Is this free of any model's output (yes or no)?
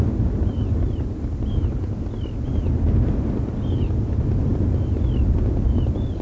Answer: yes